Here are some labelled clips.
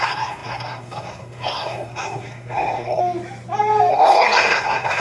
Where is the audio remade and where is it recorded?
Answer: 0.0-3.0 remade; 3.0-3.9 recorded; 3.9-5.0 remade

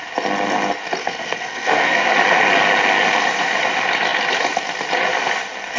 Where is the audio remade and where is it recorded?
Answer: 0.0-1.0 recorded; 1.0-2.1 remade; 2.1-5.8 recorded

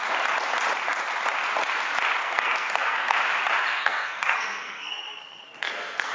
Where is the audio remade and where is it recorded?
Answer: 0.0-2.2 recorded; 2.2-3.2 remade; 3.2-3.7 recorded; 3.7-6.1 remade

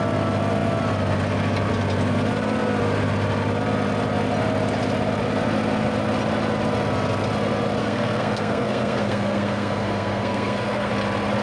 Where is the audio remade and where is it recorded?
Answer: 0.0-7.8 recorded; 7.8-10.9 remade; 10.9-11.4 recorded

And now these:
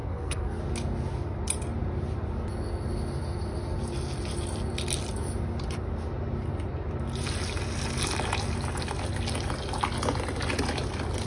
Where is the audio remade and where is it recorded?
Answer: 0.0-0.6 remade; 0.6-11.3 recorded